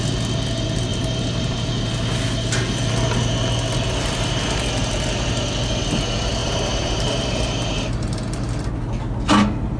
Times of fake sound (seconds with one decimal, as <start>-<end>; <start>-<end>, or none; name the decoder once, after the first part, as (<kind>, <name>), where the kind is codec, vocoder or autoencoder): 0.9-1.7 (vocoder, BigVGAN v2); 6.4-7.3